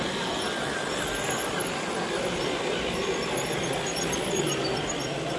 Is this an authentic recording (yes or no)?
yes